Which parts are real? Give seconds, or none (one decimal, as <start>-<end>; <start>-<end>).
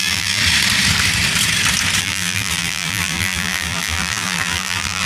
0.4-2.0